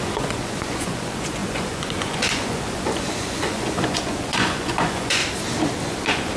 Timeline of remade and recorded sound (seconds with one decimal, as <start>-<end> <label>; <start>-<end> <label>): 0.0-5.2 remade; 5.2-5.8 recorded; 5.8-6.4 remade